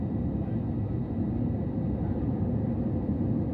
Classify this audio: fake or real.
real